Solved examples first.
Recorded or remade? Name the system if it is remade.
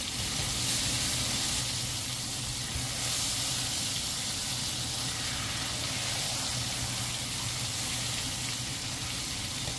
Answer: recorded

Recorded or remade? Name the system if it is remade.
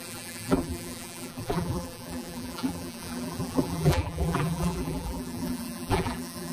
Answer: remade, vocoder, BigVGAN v2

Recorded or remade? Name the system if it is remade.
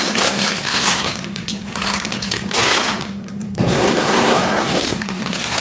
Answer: remade, codec, SNAC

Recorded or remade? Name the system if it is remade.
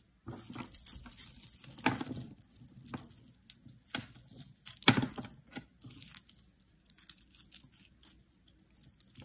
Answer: recorded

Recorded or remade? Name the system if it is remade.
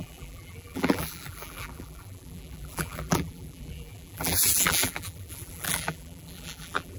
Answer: remade, vocoder, BigVGAN v2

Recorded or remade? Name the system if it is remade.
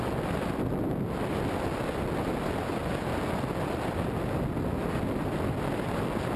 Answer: recorded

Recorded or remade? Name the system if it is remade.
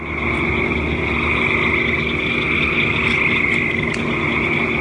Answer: recorded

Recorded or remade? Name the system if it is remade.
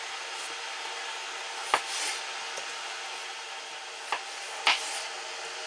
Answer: recorded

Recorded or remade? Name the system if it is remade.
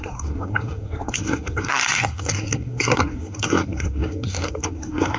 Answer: remade, codec, SNAC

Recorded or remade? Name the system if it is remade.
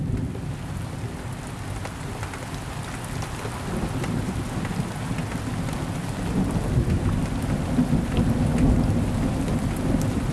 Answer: recorded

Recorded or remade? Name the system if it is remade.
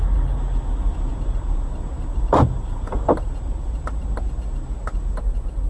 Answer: recorded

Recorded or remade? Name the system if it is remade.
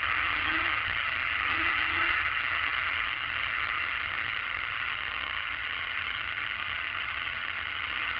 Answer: remade, vocoder, HiFi-GAN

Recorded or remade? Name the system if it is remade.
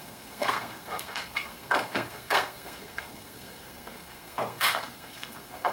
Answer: remade, codec, SNAC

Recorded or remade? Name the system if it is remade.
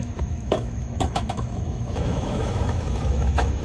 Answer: remade, autoencoder, DAC-VAE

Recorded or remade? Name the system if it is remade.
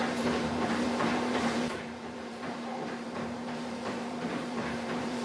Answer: remade, vocoder, BigVGAN v2